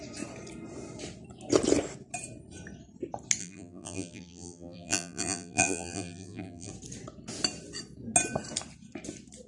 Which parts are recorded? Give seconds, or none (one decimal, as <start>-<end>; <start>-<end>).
0.0-3.4; 6.7-9.5